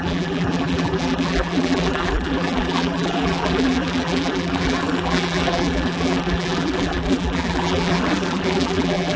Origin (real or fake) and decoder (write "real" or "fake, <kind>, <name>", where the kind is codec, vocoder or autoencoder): fake, vocoder, BigVGAN v2